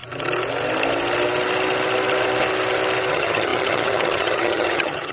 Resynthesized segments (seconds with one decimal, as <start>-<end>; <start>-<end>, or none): 3.1-5.1